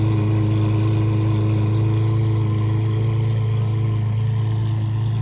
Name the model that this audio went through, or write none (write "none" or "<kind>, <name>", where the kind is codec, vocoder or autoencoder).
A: none